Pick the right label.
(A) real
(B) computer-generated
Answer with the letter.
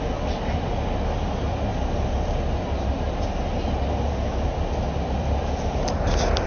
A